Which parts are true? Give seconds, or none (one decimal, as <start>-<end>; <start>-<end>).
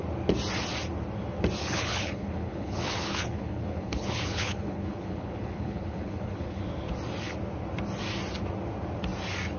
0.0-1.6; 6.6-9.6